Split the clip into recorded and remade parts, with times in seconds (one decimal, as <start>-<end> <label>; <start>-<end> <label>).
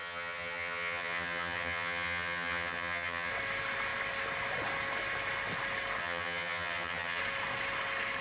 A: 0.0-3.3 remade; 3.3-6.0 recorded; 6.0-7.2 remade; 7.2-8.2 recorded